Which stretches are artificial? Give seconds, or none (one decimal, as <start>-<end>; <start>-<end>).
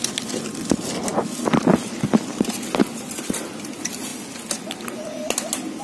none